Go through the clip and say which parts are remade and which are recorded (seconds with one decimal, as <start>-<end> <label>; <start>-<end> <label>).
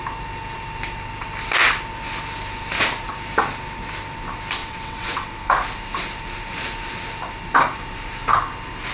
0.0-4.6 recorded; 4.6-5.4 remade; 5.4-8.9 recorded